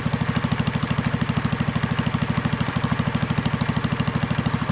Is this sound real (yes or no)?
yes